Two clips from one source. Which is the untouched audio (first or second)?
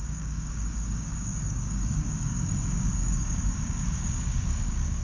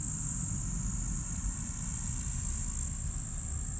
second